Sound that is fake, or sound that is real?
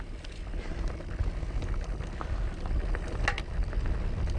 real